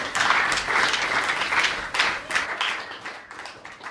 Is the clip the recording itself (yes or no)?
yes